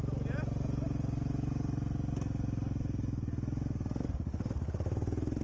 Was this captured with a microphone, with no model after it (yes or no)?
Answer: yes